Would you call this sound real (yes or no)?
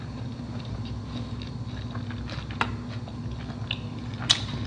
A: yes